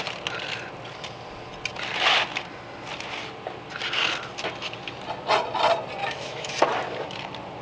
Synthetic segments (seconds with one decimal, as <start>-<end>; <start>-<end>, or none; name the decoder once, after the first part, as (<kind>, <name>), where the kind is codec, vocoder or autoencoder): 6.0-6.5 (autoencoder, DAC-VAE)